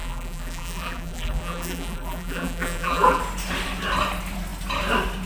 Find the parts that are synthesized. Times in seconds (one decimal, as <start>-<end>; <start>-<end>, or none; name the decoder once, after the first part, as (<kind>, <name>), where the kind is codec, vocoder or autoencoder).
0.0-3.2 (vocoder, BigVGAN v2)